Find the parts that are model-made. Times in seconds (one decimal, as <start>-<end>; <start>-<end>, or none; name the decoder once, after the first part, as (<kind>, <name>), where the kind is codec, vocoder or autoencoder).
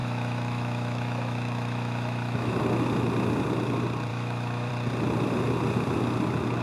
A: 0.0-2.5 (autoencoder, DAC-VAE); 4.1-4.7